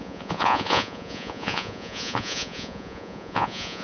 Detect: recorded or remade remade